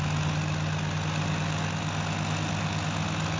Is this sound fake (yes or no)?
no